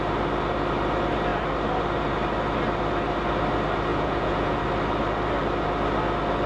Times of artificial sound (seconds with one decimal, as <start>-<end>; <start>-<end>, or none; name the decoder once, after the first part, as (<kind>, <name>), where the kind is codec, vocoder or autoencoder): 3.9-4.6 (vocoder, Vocos)